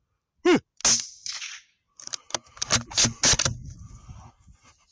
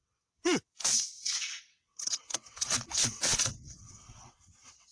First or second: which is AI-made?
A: second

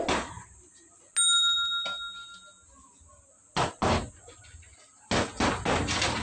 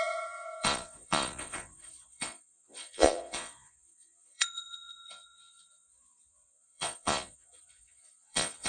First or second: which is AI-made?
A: second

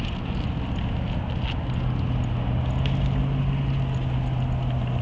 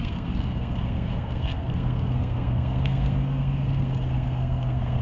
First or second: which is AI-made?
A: second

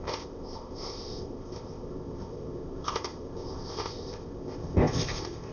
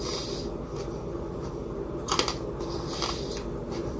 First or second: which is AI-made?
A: first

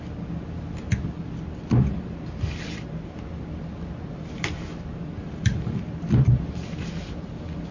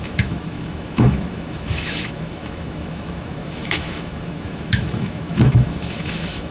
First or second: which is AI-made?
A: second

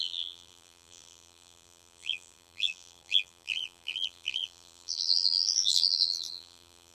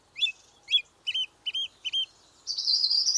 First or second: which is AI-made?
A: first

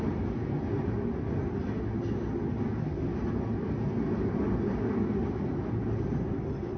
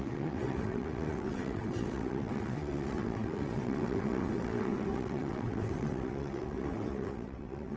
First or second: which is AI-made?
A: second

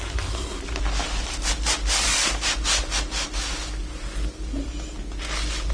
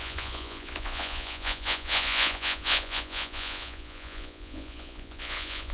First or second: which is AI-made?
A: second